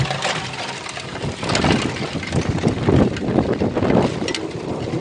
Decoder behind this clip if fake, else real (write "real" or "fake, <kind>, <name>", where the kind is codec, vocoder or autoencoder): real